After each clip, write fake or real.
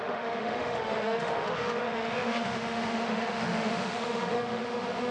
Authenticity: fake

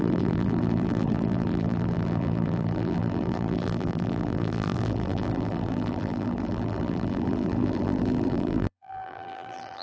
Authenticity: fake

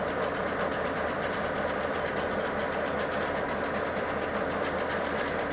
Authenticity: real